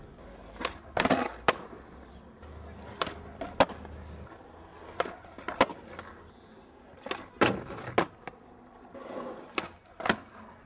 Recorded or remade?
recorded